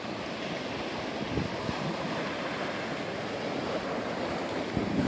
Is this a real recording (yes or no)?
yes